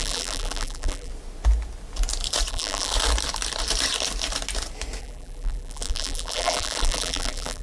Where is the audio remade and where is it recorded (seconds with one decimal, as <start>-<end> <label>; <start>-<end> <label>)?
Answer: 0.0-1.1 remade; 1.1-2.5 recorded; 2.5-2.9 remade; 2.9-5.0 recorded; 5.0-7.6 remade